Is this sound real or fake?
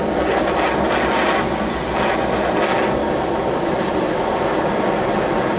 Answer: real